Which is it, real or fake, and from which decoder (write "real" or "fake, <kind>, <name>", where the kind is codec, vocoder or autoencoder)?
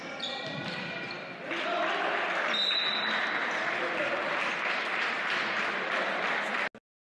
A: real